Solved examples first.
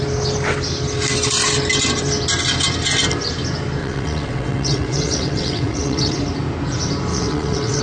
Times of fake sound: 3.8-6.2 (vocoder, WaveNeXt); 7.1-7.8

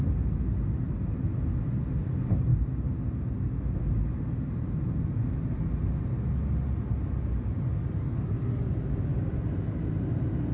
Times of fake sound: none

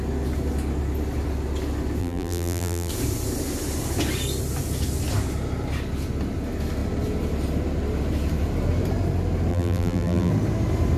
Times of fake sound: 2.0-2.9 (vocoder, BigVGAN v2); 9.5-10.3

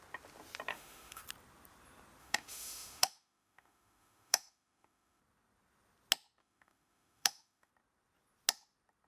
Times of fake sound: 0.7-1.2 (autoencoder, DAC-VAE); 2.2-5.2; 6.4-7.7

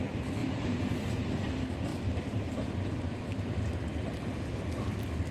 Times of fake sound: 0.4-1.1 (vocoder, BigVGAN v2); 1.9-3.4

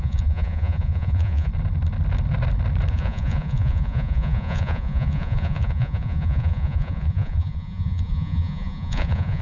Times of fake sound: 0.0-1.5 (vocoder, Vocos); 2.9-9.4